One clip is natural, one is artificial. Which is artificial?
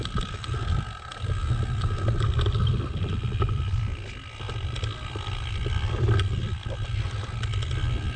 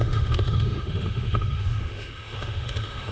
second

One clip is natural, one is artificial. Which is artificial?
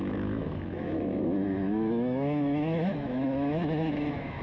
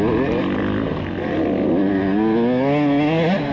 first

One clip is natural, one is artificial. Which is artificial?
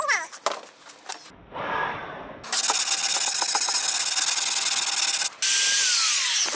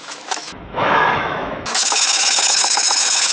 second